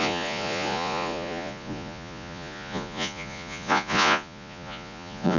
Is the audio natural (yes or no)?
no